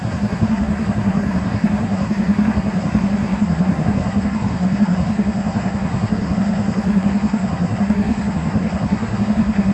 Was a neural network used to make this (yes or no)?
yes